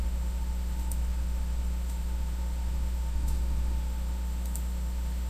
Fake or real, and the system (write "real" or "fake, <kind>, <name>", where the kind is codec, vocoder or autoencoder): fake, autoencoder, DAC-VAE